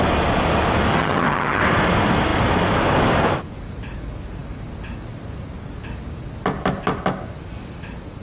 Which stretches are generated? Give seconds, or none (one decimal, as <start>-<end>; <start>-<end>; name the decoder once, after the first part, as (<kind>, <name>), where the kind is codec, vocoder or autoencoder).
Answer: 0.9-1.6 (vocoder, HiFi-GAN)